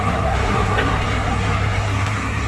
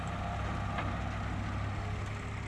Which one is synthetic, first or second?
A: first